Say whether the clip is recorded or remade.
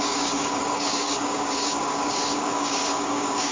remade